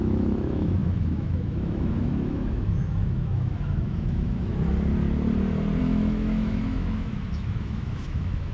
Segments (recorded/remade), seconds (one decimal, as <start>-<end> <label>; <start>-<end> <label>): 0.0-4.5 remade; 4.5-5.8 recorded; 5.8-8.5 remade